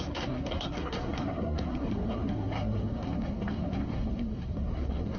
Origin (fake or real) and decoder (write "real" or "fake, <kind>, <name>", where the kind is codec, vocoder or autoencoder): fake, codec, SNAC